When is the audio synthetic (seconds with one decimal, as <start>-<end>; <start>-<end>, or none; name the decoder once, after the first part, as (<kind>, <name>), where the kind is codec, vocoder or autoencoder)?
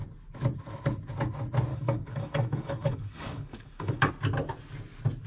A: 1.7-4.1 (codec, DAC)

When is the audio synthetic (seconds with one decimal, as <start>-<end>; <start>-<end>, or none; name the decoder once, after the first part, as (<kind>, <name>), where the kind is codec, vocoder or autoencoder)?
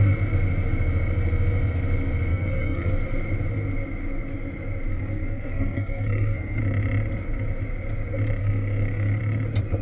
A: 2.3-2.9 (codec, SNAC); 4.9-6.6; 8.4-9.2